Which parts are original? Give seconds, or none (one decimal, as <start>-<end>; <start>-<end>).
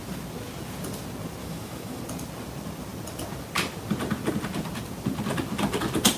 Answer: 0.0-1.4; 2.0-6.2